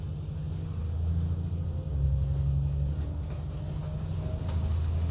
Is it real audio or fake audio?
real